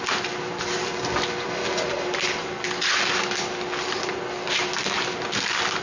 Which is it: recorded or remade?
recorded